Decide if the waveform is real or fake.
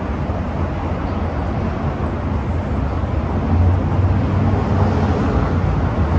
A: real